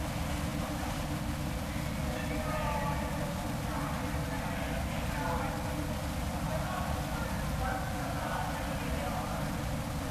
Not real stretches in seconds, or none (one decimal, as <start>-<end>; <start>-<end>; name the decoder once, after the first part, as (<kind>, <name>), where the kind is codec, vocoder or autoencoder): none